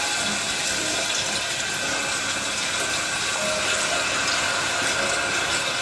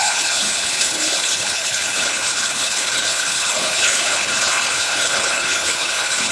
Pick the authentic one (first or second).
first